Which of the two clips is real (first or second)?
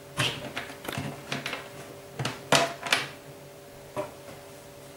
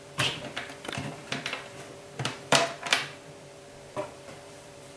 first